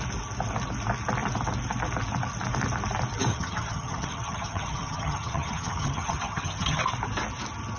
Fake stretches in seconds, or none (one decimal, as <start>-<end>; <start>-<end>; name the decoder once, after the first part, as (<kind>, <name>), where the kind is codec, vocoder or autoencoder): 3.3-6.8 (vocoder, HiFi-GAN)